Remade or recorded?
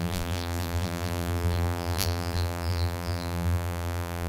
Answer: remade